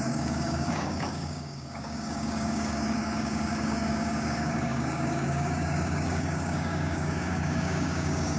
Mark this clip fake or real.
fake